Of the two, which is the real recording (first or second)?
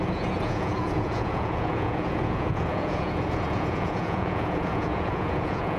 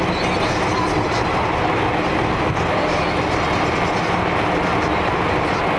second